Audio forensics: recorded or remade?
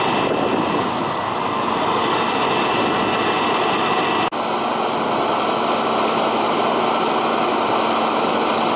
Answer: recorded